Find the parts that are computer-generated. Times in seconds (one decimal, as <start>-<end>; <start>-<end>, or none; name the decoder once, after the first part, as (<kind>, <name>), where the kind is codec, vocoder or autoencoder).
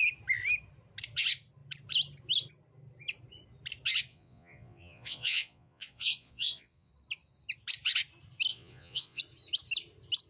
4.1-6.9 (vocoder, Vocos); 8.5-9.2